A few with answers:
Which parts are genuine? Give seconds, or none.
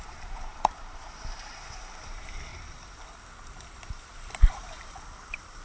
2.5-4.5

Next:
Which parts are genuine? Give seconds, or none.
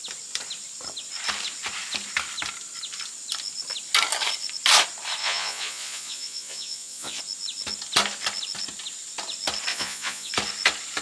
0.0-5.2; 7.2-9.7; 10.3-11.0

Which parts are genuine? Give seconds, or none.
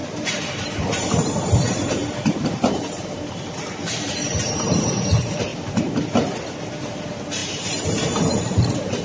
5.5-6.8